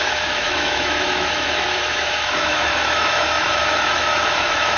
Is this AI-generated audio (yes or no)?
yes